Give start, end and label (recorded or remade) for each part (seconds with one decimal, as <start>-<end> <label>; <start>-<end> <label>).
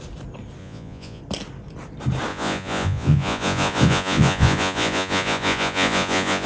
0.0-0.6 recorded; 0.6-1.2 remade; 1.2-2.3 recorded; 2.3-6.5 remade